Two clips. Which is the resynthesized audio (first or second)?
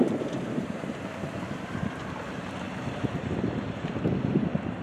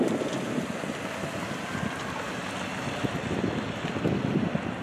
first